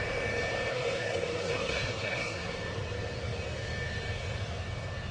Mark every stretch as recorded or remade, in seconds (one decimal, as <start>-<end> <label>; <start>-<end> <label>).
0.0-0.7 recorded; 0.7-2.5 remade; 2.5-5.1 recorded